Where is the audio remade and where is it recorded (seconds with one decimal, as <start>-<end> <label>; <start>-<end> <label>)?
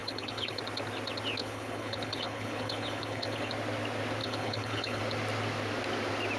0.0-0.6 remade; 0.6-1.4 recorded; 1.4-3.5 remade; 3.5-4.2 recorded; 4.2-5.0 remade; 5.0-6.4 recorded